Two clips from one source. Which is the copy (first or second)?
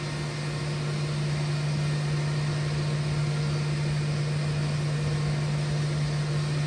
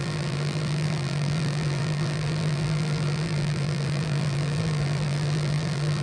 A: second